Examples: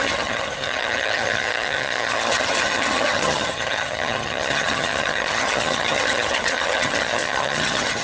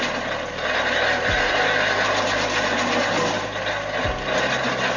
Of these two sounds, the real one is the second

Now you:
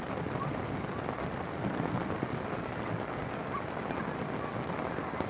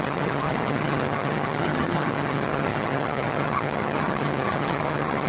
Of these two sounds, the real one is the first